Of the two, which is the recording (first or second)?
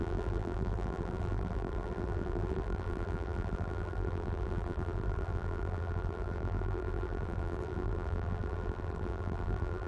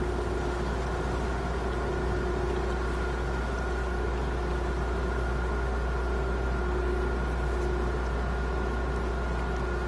second